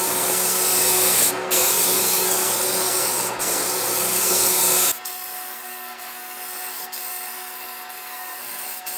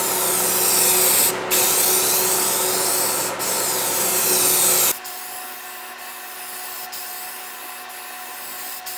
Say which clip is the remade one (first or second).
first